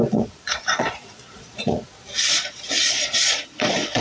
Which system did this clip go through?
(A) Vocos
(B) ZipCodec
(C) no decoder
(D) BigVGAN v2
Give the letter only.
A